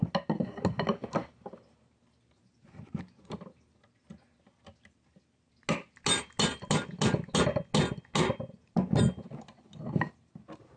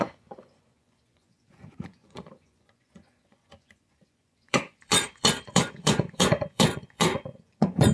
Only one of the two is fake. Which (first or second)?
second